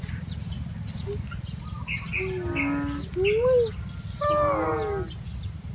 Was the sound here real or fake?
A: real